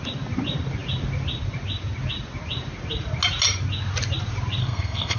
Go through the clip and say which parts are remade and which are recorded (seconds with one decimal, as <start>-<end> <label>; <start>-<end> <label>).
0.0-4.6 recorded; 4.6-5.2 remade